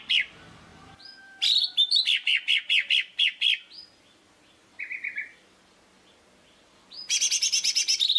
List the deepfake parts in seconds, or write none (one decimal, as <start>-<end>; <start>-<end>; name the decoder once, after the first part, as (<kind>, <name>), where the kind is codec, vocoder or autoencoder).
6.6-7.2 (vocoder, BigVGAN v2)